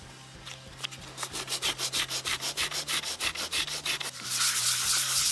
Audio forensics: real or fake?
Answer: real